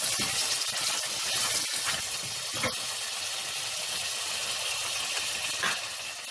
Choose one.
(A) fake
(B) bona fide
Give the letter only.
B